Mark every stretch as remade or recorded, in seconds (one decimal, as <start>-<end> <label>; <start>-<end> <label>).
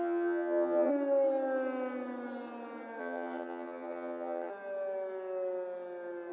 0.0-0.9 remade; 0.9-3.0 recorded; 3.0-4.5 remade; 4.5-6.3 recorded